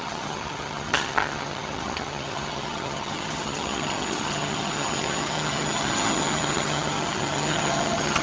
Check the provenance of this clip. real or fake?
fake